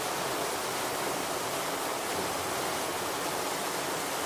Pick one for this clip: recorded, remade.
recorded